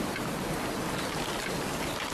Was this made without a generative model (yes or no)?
yes